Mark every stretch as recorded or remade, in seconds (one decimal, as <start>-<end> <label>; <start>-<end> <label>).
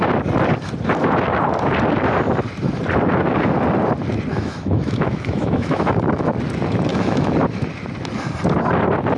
0.0-4.3 recorded; 4.3-6.3 remade; 6.3-6.9 recorded; 6.9-7.4 remade; 7.4-9.2 recorded